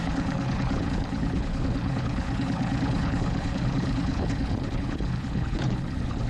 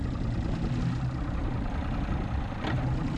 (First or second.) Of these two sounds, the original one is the second